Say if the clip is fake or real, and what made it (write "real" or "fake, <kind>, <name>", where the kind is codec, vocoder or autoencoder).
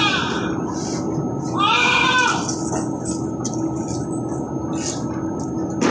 real